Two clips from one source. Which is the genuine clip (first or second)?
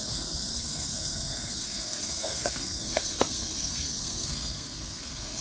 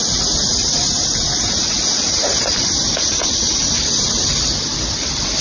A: second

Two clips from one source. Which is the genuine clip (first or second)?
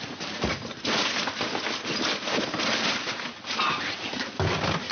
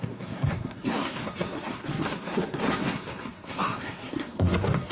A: first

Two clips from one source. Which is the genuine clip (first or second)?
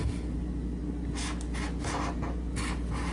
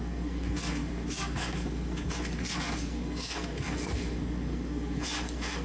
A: first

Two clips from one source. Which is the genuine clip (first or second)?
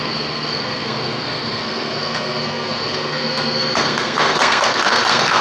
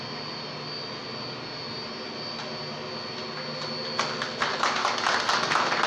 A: second